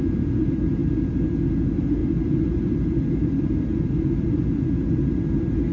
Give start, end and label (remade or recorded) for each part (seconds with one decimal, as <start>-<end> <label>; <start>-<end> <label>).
0.0-0.8 recorded; 0.8-1.5 remade; 1.5-2.0 recorded; 2.0-5.3 remade; 5.3-5.7 recorded